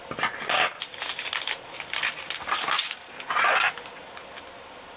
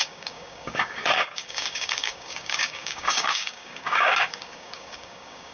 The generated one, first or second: second